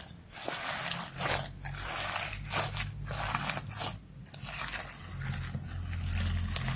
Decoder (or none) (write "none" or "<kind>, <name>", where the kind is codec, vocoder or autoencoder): none